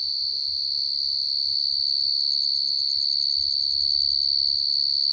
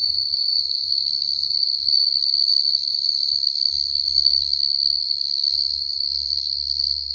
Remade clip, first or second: second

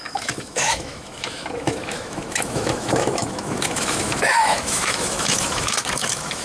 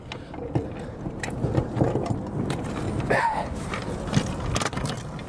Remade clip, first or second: first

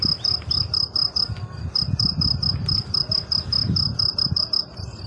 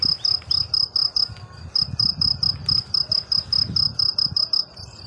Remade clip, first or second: first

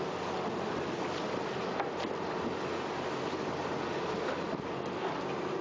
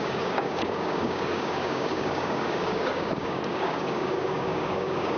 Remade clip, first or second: second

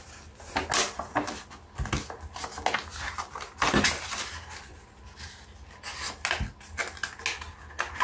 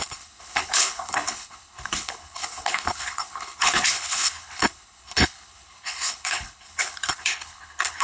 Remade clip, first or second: second